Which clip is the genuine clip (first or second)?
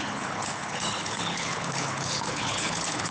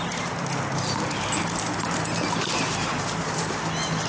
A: second